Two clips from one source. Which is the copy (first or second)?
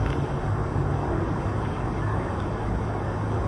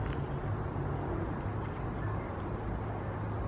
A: first